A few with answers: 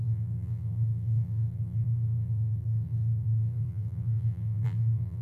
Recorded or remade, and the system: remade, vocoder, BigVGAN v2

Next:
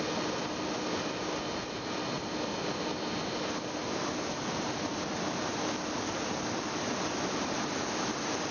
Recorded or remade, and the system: recorded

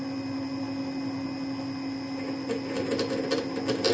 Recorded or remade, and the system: recorded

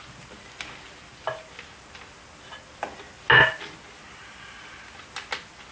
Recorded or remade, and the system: recorded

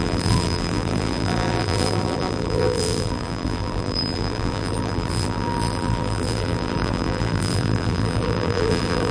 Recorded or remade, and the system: remade, vocoder, BigVGAN v2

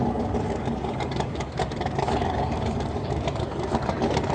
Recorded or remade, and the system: remade, codec, DAC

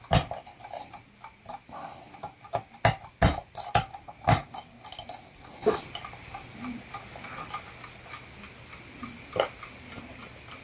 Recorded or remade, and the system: recorded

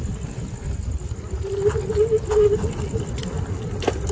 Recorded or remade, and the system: recorded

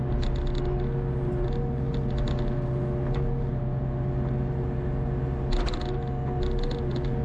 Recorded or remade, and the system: recorded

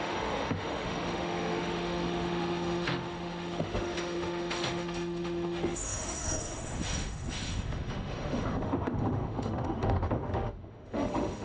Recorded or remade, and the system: remade, autoencoder, DAC-VAE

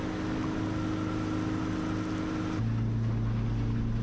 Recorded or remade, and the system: recorded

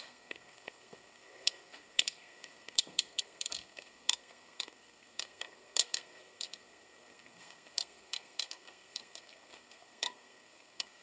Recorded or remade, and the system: remade, codec, SNAC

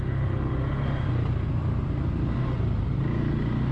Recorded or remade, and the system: recorded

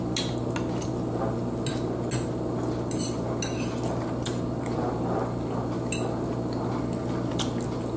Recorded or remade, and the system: recorded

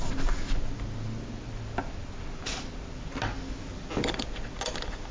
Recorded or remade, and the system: recorded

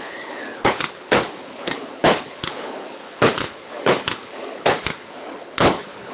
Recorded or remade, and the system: remade, codec, HILCodec